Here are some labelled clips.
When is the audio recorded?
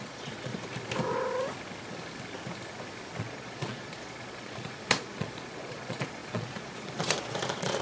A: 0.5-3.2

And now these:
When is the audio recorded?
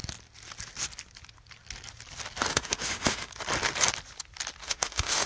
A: 0.0-2.5; 3.3-4.6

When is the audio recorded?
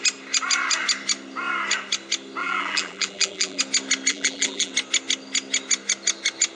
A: 0.0-2.4; 3.6-4.1; 4.7-6.6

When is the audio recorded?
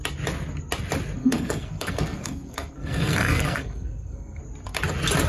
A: 0.0-1.2; 4.4-5.3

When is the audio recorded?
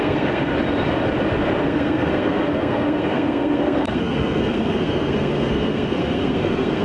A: 0.5-1.6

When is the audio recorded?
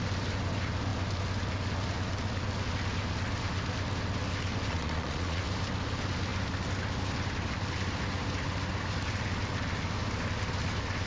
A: 0.0-4.7; 5.4-11.1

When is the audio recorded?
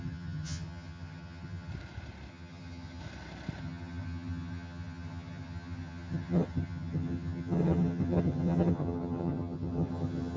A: 1.7-2.3; 3.0-3.6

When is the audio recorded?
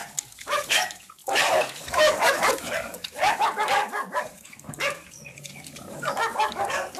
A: none